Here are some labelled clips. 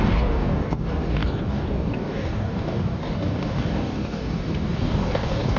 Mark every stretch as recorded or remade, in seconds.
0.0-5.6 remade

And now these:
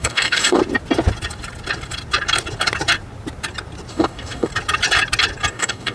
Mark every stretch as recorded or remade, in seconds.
0.0-0.6 remade; 0.6-3.9 recorded; 3.9-4.5 remade; 4.5-5.5 recorded; 5.5-5.9 remade

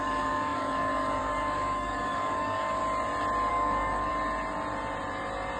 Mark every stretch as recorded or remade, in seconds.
0.0-2.8 remade; 2.8-3.5 recorded; 3.5-4.1 remade; 4.1-5.6 recorded